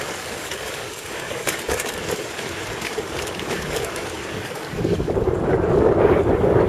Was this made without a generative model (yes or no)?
no